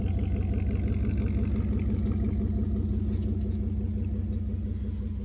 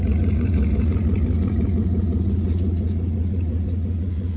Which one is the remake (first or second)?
second